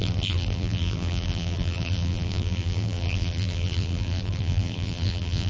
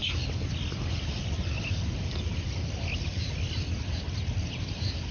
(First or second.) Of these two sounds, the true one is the second